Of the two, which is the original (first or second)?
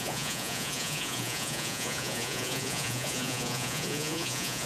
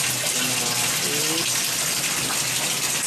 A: second